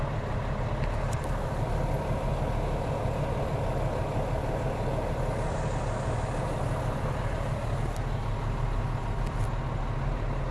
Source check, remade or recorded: recorded